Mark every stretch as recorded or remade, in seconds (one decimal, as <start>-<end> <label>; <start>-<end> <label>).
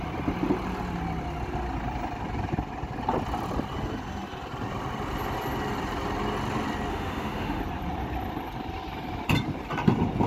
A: 0.0-6.9 recorded; 6.9-7.6 remade; 7.6-10.3 recorded